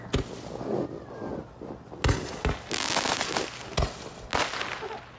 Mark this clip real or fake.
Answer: real